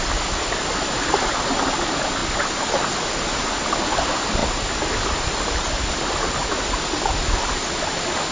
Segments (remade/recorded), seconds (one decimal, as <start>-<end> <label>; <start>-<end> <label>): 0.0-8.3 recorded